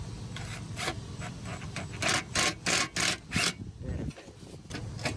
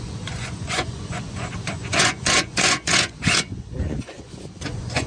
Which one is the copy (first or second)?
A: second